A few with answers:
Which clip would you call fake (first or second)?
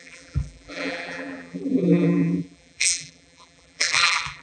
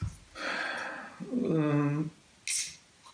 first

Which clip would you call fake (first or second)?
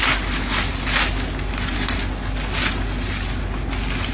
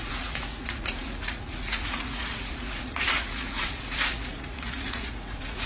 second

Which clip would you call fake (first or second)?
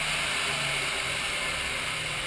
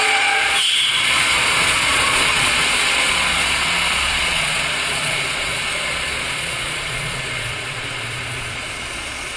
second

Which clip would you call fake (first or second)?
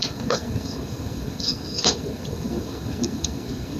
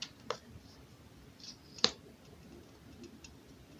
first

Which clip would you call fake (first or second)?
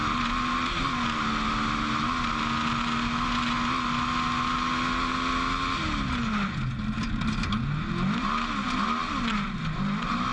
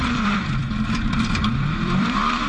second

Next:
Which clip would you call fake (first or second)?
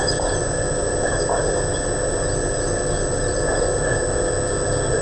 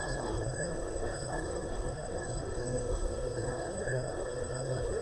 second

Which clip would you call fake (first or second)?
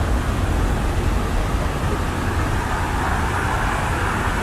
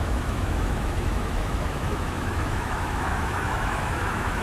second